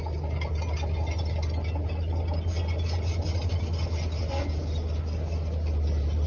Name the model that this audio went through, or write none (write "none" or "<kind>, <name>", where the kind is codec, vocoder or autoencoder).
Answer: none